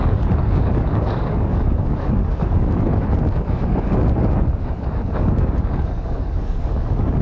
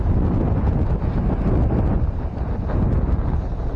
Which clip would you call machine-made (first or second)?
first